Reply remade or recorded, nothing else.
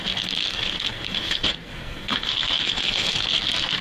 remade